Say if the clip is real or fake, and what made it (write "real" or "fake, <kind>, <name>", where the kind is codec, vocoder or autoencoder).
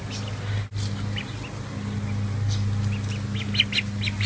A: real